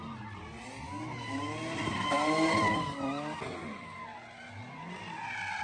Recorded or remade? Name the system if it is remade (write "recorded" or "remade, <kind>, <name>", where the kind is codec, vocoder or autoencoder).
recorded